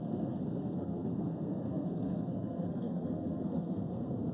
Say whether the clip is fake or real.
fake